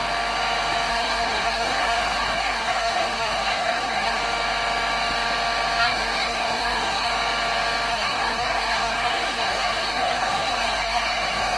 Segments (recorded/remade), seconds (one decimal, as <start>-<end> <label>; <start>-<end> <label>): 0.0-0.9 recorded; 0.9-4.2 remade; 4.2-5.8 recorded; 5.8-7.1 remade; 7.1-7.9 recorded; 7.9-11.6 remade